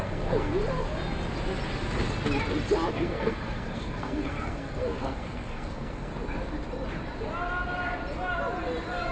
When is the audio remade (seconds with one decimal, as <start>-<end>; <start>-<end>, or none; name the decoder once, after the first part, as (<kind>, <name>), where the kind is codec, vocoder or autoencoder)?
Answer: 0.0-0.5 (codec, SNAC); 2.9-6.1